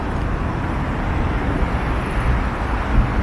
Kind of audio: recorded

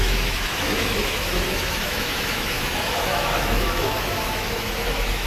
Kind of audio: remade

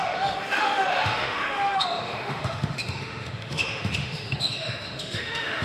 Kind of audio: remade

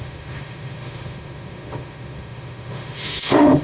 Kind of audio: remade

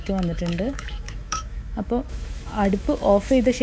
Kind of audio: remade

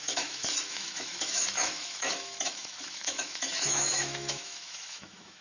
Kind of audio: remade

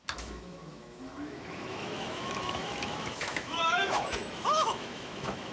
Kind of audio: remade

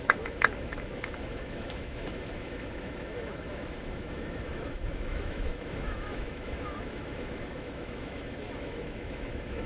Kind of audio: remade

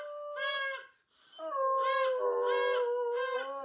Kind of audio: recorded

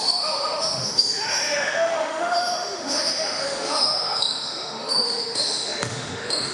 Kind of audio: remade